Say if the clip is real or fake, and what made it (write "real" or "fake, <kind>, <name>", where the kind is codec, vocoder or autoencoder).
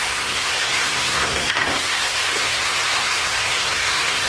fake, codec, SNAC